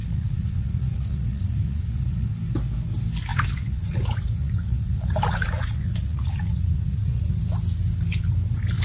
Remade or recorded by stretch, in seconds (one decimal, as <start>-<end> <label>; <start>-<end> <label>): 0.0-2.3 remade; 2.3-3.3 recorded; 3.3-4.0 remade; 4.0-4.4 recorded; 4.4-7.4 remade; 7.4-8.8 recorded